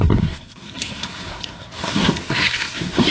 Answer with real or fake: fake